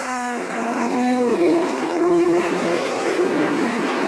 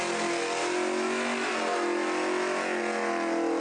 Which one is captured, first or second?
second